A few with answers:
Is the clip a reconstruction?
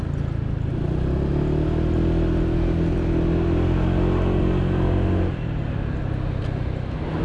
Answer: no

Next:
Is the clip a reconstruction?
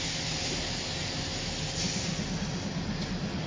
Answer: no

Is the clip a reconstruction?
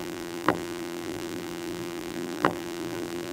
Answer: yes